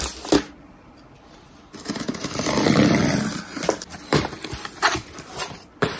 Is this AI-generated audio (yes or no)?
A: yes